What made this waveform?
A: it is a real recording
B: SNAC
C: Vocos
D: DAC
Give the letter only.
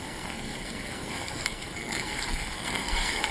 B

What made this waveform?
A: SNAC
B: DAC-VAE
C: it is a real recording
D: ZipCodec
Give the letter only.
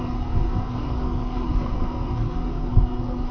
A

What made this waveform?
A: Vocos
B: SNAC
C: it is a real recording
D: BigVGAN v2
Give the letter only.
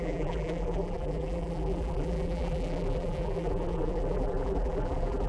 D